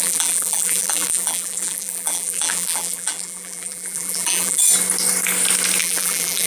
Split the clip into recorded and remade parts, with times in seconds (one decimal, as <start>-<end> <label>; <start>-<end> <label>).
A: 0.0-4.6 remade; 4.6-5.8 recorded; 5.8-6.5 remade